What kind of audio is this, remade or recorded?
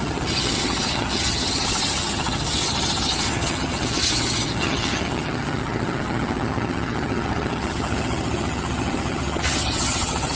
remade